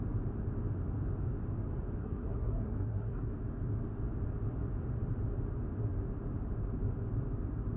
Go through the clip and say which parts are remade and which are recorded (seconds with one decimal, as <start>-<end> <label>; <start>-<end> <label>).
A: 0.0-2.0 recorded; 2.0-3.3 remade; 3.3-7.8 recorded